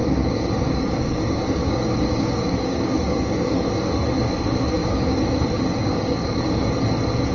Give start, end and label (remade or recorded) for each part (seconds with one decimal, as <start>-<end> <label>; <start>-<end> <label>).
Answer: 0.0-3.7 remade; 3.7-4.8 recorded; 4.8-6.7 remade; 6.7-7.3 recorded

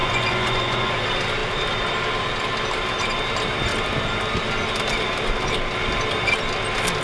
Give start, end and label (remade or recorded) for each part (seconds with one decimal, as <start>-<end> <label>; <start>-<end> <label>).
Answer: 0.0-0.9 remade; 0.9-7.0 recorded

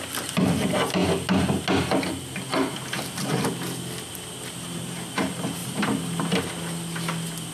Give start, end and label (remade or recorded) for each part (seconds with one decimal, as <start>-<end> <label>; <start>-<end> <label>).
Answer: 0.0-7.5 recorded